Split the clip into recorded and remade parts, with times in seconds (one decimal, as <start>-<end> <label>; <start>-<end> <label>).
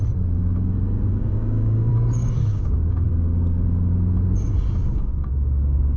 0.0-1.1 recorded; 1.1-1.9 remade; 1.9-2.5 recorded; 2.5-3.1 remade; 3.1-4.8 recorded; 4.8-5.3 remade; 5.3-6.0 recorded